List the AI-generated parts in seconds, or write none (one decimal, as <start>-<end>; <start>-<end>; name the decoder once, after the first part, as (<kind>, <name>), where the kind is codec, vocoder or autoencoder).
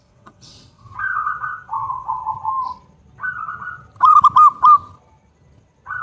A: 0.0-2.2 (vocoder, WaveNeXt)